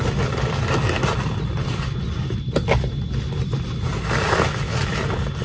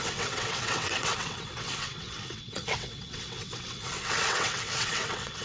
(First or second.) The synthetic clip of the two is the second